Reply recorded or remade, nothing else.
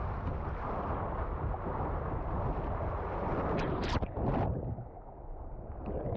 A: recorded